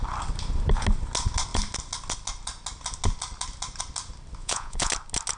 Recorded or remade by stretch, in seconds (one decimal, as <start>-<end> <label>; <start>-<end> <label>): 0.0-4.4 recorded; 4.4-4.9 remade; 4.9-5.4 recorded